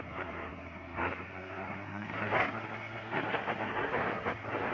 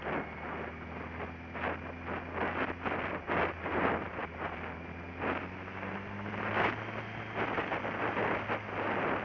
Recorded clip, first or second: second